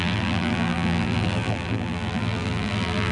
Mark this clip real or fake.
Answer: fake